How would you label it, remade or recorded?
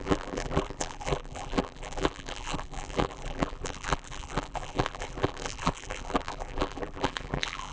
remade